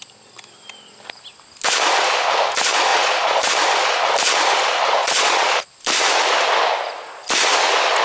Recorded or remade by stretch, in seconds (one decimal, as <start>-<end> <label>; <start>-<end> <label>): 0.0-2.9 recorded; 2.9-3.5 remade; 3.5-5.0 recorded; 5.0-5.5 remade; 5.5-8.0 recorded